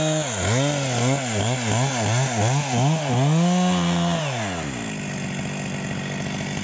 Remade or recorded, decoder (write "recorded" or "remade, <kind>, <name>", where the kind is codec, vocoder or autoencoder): recorded